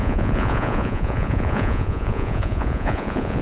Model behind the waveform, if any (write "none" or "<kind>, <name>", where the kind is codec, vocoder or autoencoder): vocoder, Vocos